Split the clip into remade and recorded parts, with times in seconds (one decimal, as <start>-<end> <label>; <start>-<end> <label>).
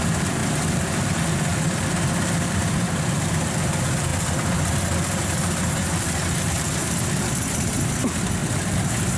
0.0-9.2 remade